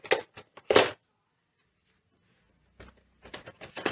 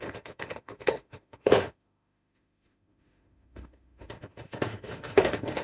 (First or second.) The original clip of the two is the first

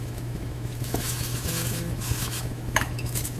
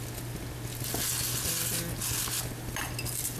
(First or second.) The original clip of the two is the second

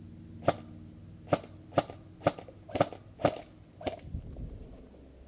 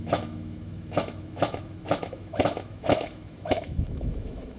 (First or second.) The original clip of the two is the first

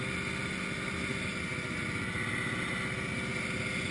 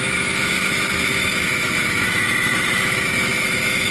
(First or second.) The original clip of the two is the first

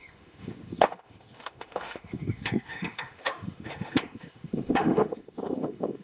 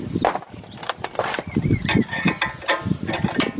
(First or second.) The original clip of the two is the second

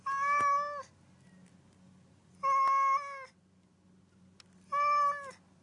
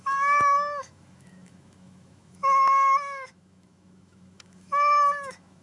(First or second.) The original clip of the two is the first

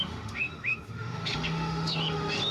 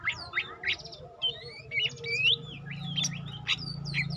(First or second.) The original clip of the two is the second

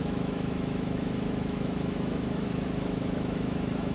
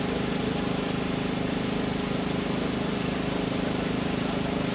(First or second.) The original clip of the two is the second